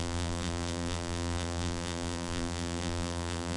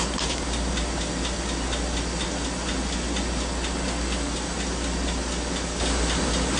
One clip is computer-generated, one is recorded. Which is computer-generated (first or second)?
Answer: first